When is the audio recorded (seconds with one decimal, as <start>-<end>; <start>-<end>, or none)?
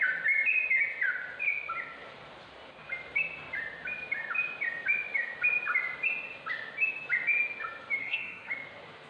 0.0-8.0; 8.5-9.1